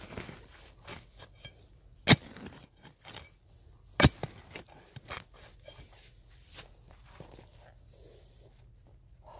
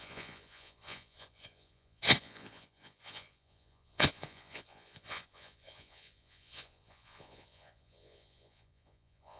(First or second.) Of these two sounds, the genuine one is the first